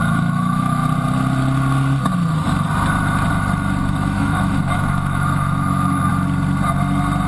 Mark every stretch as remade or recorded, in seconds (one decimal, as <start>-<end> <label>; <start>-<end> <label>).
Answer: 0.0-0.8 remade; 0.8-3.8 recorded; 3.8-6.1 remade; 6.1-7.3 recorded